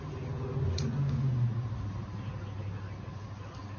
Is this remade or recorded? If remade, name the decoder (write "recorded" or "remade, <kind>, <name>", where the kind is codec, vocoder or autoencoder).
recorded